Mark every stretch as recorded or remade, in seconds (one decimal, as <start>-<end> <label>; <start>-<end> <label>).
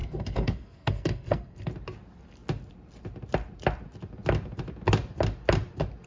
0.0-1.7 remade; 1.7-6.1 recorded